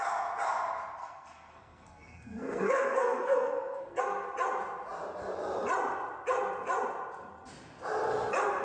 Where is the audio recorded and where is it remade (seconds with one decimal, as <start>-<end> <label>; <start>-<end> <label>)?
0.0-1.0 recorded; 1.0-4.0 remade; 4.0-8.6 recorded